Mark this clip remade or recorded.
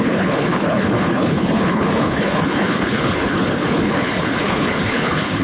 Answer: remade